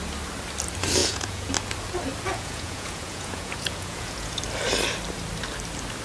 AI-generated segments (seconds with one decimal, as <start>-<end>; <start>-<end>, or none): 1.0-1.5; 2.3-4.4